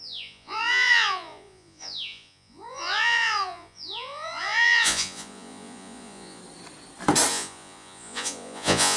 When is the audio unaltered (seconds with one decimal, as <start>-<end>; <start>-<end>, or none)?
6.4-7.3